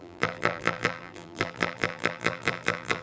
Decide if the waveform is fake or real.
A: fake